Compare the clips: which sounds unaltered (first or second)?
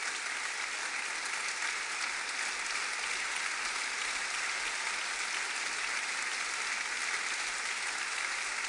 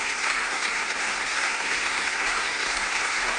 first